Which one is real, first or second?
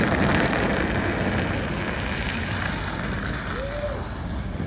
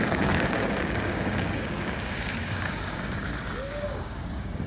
first